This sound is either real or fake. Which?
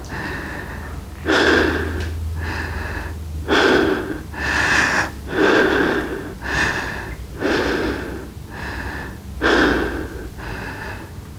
real